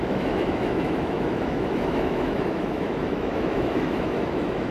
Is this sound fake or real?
fake